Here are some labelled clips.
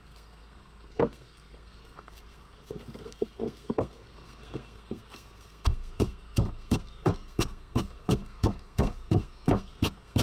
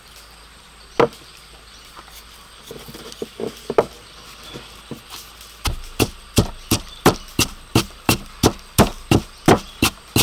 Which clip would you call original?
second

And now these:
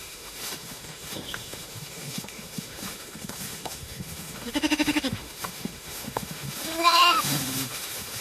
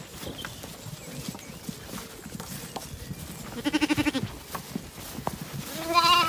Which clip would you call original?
second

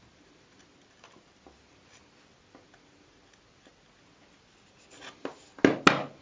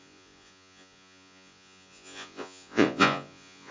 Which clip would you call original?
first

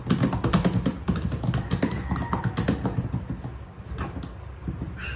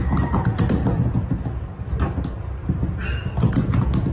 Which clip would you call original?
first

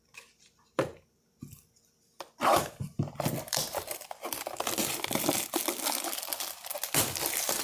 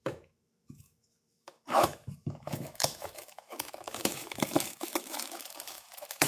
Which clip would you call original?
first